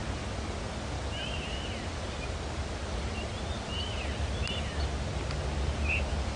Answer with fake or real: real